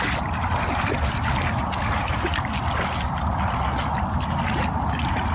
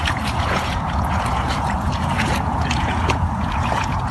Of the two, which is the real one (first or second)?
first